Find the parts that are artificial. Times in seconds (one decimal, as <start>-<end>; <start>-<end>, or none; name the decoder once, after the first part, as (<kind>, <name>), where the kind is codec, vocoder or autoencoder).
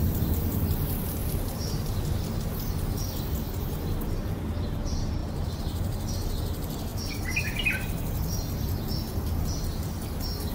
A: none